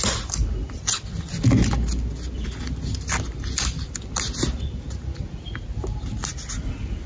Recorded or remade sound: recorded